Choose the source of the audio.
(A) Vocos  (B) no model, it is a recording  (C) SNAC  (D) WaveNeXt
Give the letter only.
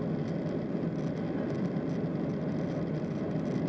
B